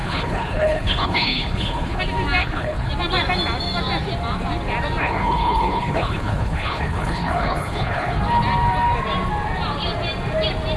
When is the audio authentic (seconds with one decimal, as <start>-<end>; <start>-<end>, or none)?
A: 2.0-2.4; 2.9-5.0; 8.2-10.8